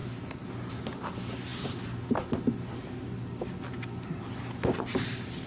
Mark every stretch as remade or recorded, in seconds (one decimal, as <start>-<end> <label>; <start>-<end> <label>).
0.0-5.5 recorded